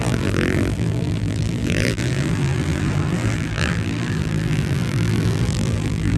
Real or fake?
fake